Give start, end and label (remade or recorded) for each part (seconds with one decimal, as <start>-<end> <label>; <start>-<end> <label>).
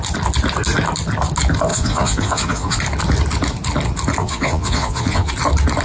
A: 0.0-1.7 recorded; 1.7-2.8 remade; 2.8-4.2 recorded; 4.2-5.3 remade; 5.3-5.8 recorded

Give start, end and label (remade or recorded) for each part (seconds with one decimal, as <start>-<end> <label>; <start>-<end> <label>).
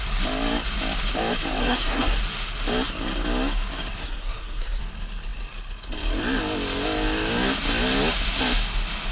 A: 0.0-1.6 recorded; 1.6-2.2 remade; 2.2-4.0 recorded; 4.0-4.8 remade; 4.8-9.1 recorded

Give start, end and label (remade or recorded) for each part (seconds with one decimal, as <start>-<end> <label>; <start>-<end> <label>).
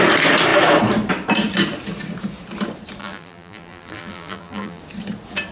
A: 0.0-3.0 recorded; 3.0-4.8 remade; 4.8-5.5 recorded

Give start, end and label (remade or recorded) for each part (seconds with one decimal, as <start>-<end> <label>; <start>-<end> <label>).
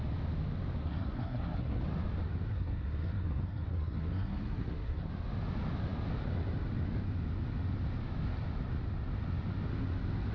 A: 0.0-0.8 recorded; 0.8-1.8 remade; 1.8-2.5 recorded; 2.5-5.1 remade; 5.1-10.3 recorded